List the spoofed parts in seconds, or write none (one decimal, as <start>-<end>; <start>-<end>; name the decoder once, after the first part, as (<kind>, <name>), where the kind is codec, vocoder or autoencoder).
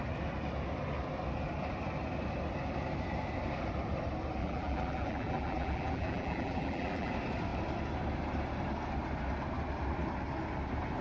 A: 4.4-7.1 (vocoder, BigVGAN v2)